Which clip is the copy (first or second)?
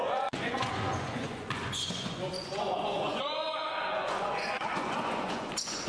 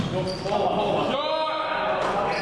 first